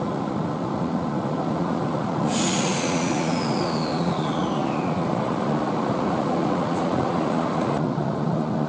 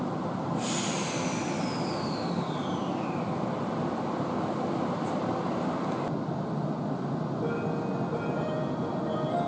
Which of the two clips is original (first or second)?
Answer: second